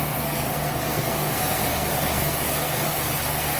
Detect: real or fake fake